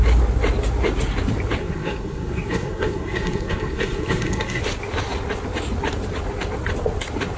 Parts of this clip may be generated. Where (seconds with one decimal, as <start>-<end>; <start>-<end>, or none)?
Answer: 1.6-4.6